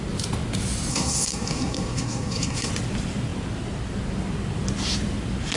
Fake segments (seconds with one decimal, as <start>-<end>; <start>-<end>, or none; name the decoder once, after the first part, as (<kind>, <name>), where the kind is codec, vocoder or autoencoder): 0.9-2.7 (codec, SNAC)